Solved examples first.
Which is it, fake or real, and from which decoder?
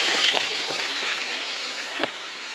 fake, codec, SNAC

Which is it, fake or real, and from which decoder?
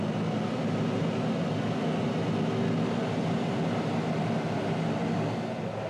real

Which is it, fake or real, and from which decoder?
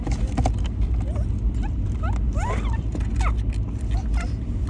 real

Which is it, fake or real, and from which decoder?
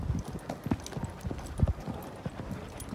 real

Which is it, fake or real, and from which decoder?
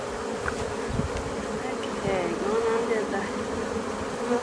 real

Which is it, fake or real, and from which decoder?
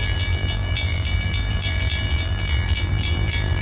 fake, vocoder, BigVGAN v2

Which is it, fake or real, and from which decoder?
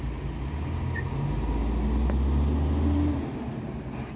real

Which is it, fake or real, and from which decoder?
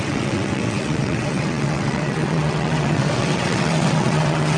fake, vocoder, WaveNeXt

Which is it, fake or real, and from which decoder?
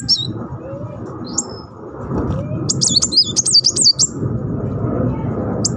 real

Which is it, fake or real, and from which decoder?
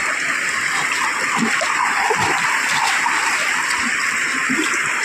fake, vocoder, BigVGAN v2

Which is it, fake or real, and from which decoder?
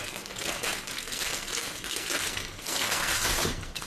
fake, codec, SNAC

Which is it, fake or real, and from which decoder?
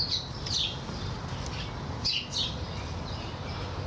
real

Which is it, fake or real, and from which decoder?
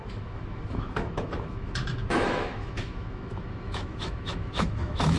fake, autoencoder, DAC-VAE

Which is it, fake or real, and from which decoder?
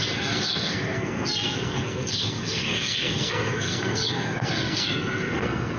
fake, codec, SNAC